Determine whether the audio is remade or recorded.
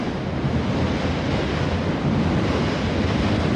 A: recorded